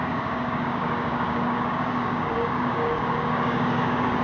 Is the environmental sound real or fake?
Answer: fake